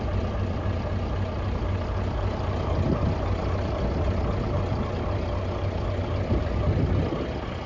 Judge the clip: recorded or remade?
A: recorded